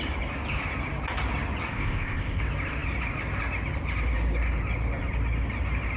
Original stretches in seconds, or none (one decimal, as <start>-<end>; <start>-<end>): 0.0-1.7; 2.4-6.0